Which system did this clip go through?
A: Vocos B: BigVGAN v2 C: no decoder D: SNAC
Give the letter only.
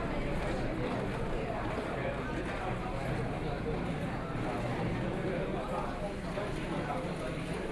C